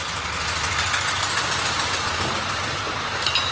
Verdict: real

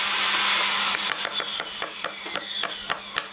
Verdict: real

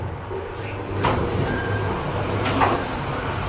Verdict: fake